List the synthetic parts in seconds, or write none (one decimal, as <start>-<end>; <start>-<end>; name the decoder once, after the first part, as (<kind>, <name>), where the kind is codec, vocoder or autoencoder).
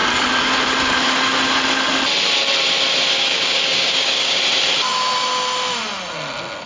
3.1-4.4 (codec, DAC)